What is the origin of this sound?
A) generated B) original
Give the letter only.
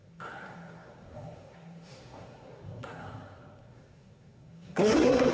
A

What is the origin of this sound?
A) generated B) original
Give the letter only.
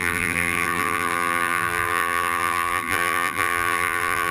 A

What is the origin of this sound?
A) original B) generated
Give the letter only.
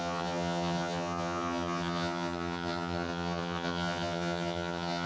B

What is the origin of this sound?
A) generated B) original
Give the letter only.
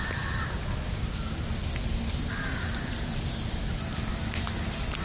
B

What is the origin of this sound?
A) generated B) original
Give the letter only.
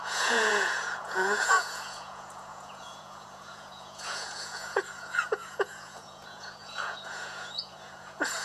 A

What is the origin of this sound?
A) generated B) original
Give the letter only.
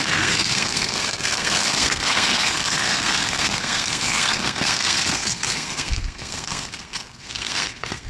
A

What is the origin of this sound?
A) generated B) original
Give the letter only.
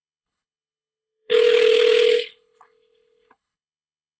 A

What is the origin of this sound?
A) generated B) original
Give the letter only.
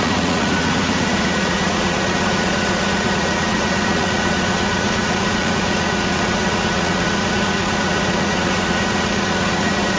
A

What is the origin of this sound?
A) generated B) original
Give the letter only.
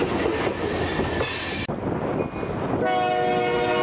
B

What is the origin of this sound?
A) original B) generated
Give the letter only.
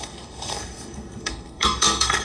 B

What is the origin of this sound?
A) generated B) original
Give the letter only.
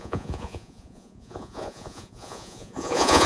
A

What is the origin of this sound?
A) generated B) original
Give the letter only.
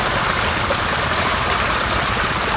B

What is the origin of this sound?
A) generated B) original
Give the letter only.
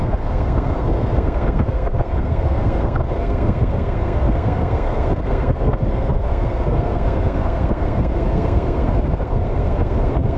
A